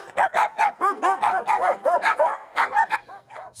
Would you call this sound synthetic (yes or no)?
yes